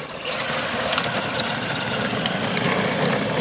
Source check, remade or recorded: recorded